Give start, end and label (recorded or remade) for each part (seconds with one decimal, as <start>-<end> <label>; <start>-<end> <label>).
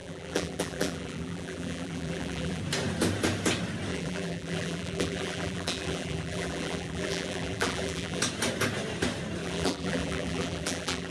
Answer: 0.0-2.6 remade; 2.6-3.9 recorded; 3.9-8.2 remade; 8.2-9.4 recorded; 9.4-11.1 remade